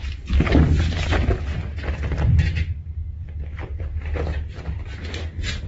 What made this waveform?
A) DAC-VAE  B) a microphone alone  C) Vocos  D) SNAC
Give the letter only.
B